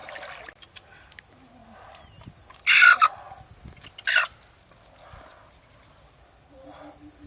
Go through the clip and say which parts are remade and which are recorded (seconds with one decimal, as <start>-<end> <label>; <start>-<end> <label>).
0.0-7.3 recorded